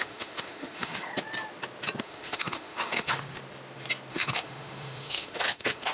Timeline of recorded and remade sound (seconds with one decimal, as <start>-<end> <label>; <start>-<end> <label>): 0.0-1.1 remade; 1.1-2.0 recorded; 2.0-3.4 remade; 3.4-4.1 recorded; 4.1-5.9 remade